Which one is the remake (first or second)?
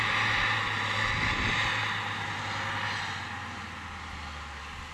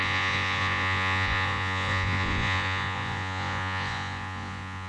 second